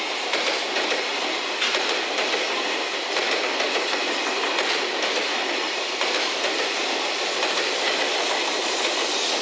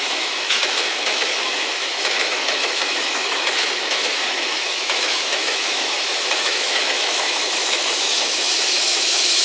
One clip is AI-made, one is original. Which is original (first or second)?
first